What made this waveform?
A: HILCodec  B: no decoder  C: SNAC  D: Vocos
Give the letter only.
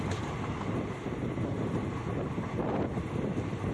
B